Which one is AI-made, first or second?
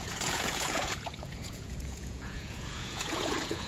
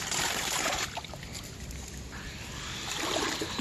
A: first